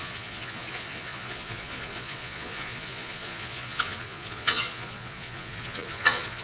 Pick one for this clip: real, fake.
fake